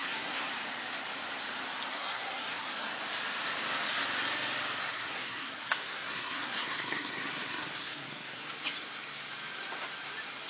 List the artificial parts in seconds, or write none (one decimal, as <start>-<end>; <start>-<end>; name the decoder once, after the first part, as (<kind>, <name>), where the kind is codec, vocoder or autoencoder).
0.0-0.5 (codec, SNAC); 1.9-2.9; 4.8-8.4